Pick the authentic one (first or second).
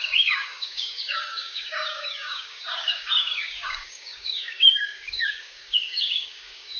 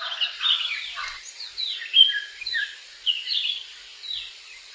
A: second